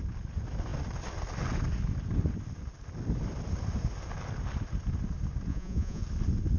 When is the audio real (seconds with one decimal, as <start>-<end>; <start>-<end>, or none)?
0.0-5.5; 6.0-6.6